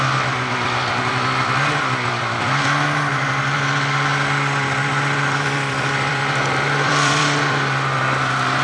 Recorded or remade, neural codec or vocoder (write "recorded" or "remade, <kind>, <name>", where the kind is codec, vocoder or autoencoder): remade, vocoder, BigVGAN v2